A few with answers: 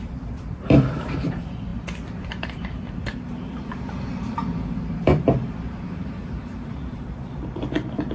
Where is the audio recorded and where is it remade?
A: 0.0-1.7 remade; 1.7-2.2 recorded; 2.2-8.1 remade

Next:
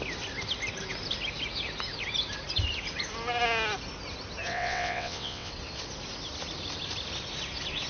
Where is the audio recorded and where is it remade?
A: 0.0-4.5 recorded; 4.5-5.5 remade; 5.5-7.9 recorded

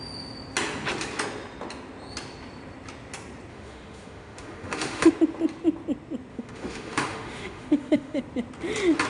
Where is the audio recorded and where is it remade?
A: 0.0-3.5 recorded; 3.5-5.1 remade; 5.1-6.3 recorded; 6.3-8.2 remade; 8.2-9.1 recorded

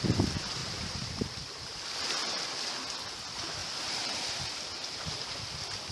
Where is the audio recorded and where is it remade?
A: 0.0-0.6 recorded; 0.6-1.3 remade; 1.3-3.6 recorded; 3.6-4.5 remade; 4.5-5.9 recorded

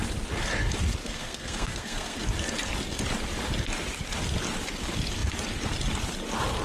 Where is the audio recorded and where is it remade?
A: 0.0-1.0 recorded; 1.0-2.2 remade; 2.2-6.6 recorded

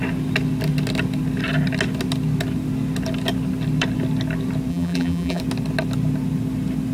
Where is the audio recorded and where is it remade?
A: 0.0-4.7 recorded; 4.7-5.4 remade; 5.4-6.9 recorded